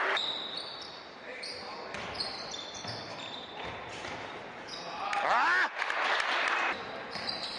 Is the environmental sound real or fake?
fake